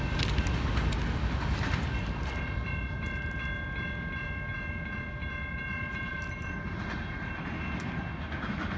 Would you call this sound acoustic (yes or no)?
yes